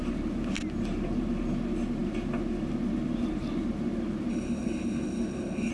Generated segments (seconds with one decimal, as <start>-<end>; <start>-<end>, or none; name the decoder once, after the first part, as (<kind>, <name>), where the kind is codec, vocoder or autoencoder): 4.3-5.7 (codec, HILCodec)